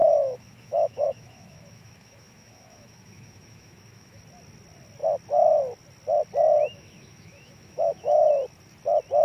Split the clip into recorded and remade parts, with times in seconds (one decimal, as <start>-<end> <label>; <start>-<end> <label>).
0.0-4.2 remade; 4.2-6.6 recorded; 6.6-8.3 remade; 8.3-9.2 recorded